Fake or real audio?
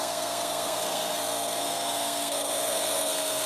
fake